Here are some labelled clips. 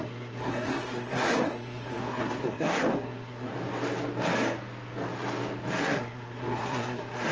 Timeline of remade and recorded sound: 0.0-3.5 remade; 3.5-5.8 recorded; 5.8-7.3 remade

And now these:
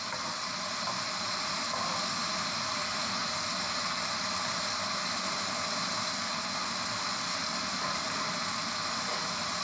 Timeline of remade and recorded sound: 0.0-9.6 recorded

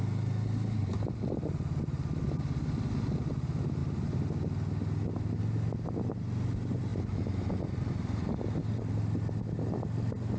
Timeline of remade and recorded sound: 0.0-10.4 recorded

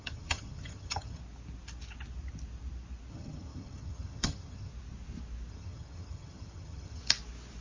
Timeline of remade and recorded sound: 0.0-1.2 remade; 1.2-3.1 recorded; 3.1-4.7 remade; 4.7-5.5 recorded; 5.5-7.0 remade; 7.0-7.6 recorded

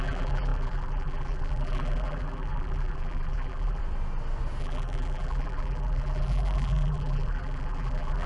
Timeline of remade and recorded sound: 0.0-3.8 remade; 3.8-4.6 recorded; 4.6-8.3 remade